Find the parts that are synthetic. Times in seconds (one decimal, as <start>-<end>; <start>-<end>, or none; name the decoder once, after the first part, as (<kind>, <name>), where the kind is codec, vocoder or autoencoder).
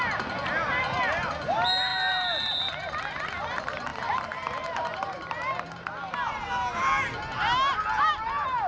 none